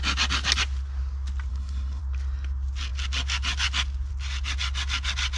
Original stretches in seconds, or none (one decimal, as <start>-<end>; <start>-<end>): 0.0-1.5; 2.0-5.4

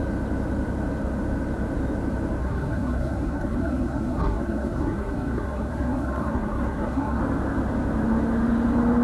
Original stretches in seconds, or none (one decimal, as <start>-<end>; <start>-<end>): 0.0-2.4; 7.2-9.0